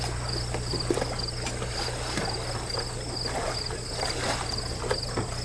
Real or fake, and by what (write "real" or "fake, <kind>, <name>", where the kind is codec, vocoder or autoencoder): real